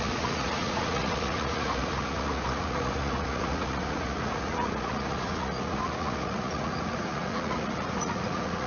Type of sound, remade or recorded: remade